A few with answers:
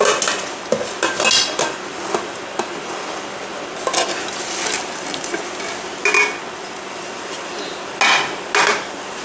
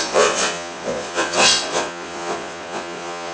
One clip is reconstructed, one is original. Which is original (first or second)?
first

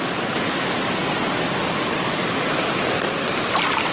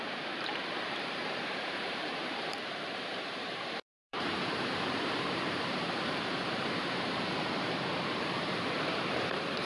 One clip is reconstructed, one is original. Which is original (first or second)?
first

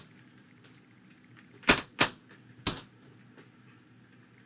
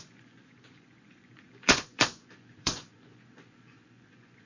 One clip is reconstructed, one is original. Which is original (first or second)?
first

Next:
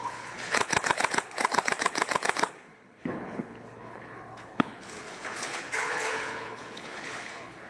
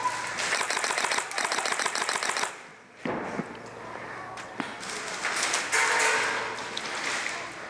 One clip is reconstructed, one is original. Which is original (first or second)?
second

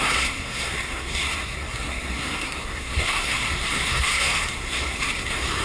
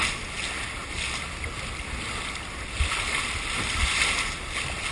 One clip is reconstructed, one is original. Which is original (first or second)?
second